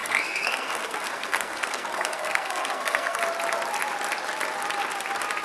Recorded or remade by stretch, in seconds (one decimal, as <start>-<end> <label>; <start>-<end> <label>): 0.0-3.2 remade; 3.2-5.4 recorded

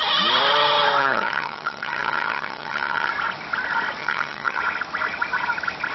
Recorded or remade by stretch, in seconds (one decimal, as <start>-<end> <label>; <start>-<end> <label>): 0.0-1.0 recorded; 1.0-3.1 remade; 3.1-4.0 recorded; 4.0-4.6 remade; 4.6-5.9 recorded

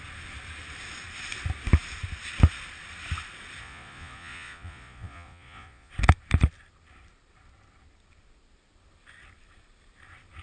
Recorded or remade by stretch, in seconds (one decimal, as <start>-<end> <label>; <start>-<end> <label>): 0.0-3.6 recorded; 3.6-5.9 remade; 5.9-10.4 recorded

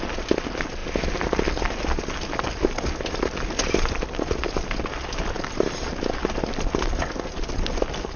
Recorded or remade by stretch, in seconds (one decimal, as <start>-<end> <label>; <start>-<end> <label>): 0.0-8.2 recorded